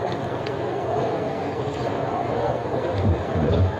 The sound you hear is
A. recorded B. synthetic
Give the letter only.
B